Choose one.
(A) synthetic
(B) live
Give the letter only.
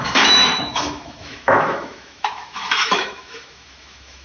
A